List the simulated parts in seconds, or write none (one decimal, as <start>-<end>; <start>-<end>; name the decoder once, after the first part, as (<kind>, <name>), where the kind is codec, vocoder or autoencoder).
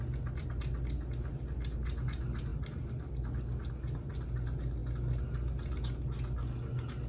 none